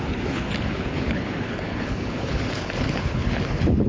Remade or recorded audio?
remade